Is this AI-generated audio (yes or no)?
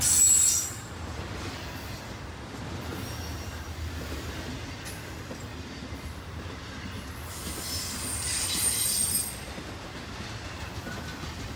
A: no